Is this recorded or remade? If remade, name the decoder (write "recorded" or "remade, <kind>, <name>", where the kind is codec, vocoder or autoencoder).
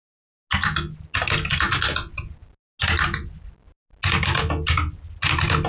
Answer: recorded